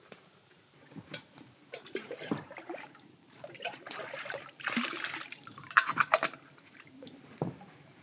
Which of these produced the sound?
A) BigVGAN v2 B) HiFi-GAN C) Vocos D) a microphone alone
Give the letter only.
A